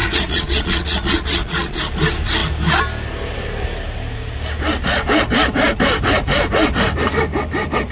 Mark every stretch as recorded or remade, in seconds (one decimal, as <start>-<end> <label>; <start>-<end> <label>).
0.0-1.8 remade; 1.8-7.9 recorded